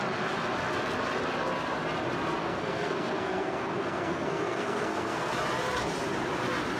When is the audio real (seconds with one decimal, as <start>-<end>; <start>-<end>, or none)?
0.0-2.4; 5.3-6.8